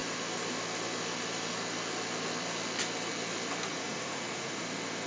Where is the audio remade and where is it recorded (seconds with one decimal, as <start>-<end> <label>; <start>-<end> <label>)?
0.0-3.7 recorded; 3.7-4.6 remade; 4.6-5.1 recorded

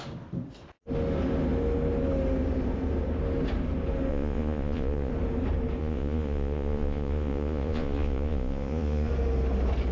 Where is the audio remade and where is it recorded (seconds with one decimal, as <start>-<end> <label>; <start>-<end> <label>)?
0.0-4.1 recorded; 4.1-5.1 remade; 5.1-5.8 recorded; 5.8-9.1 remade; 9.1-9.9 recorded

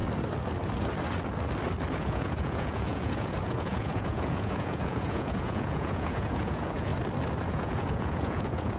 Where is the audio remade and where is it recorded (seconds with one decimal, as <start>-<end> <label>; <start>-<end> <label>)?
0.0-1.9 recorded; 1.9-6.9 remade; 6.9-7.5 recorded; 7.5-8.8 remade

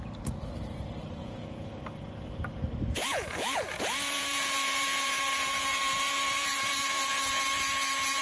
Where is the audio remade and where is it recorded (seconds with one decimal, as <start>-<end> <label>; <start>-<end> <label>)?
0.0-1.2 recorded; 1.2-1.8 remade; 1.8-3.0 recorded; 3.0-8.2 remade

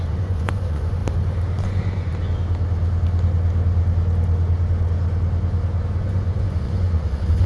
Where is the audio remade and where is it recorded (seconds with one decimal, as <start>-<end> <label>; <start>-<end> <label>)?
0.0-1.0 remade; 1.0-1.6 recorded; 1.6-2.1 remade; 2.1-6.0 recorded; 6.0-7.5 remade

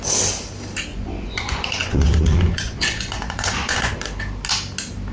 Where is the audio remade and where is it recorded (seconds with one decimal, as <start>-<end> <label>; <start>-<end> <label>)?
0.0-0.9 recorded; 0.9-3.9 remade; 3.9-5.1 recorded

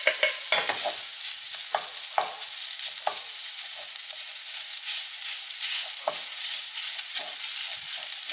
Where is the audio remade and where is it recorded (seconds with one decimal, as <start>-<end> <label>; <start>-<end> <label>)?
0.0-1.1 recorded; 1.1-1.6 remade; 1.6-3.1 recorded; 3.1-7.2 remade; 7.2-8.3 recorded

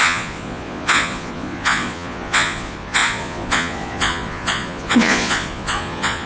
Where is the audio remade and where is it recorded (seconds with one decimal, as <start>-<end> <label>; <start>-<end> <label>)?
0.0-6.3 remade